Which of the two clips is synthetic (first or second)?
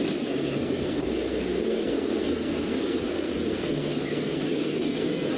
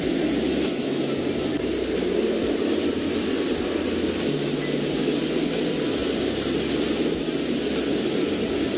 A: first